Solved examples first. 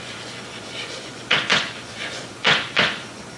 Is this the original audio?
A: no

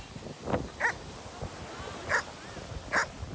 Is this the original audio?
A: yes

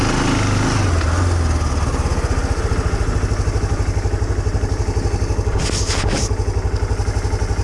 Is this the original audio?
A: yes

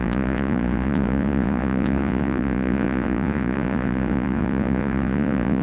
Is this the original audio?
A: no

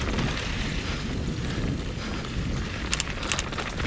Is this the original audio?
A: yes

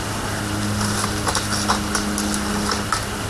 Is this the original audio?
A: yes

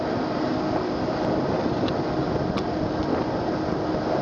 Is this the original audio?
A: yes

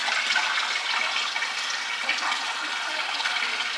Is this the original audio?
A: yes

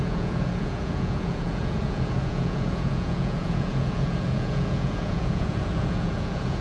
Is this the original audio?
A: no